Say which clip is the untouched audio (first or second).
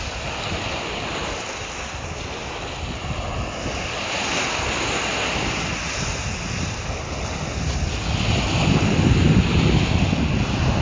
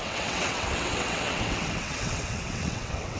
first